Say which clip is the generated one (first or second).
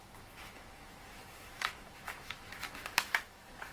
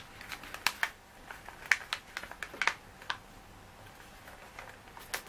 first